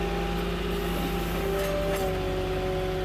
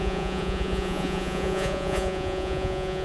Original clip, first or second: first